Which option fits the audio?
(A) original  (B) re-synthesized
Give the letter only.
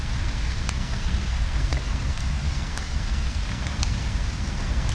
B